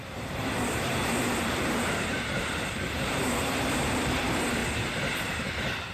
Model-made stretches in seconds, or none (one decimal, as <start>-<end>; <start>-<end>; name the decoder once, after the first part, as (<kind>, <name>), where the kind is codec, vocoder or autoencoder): 0.0-4.6 (vocoder, BigVGAN v2); 5.2-5.9

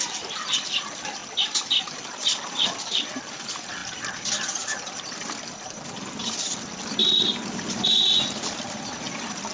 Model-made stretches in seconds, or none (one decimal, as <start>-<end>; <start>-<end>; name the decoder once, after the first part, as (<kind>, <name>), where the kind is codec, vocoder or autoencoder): 0.0-1.2 (vocoder, BigVGAN v2); 3.3-3.8; 6.2-7.0; 8.1-9.5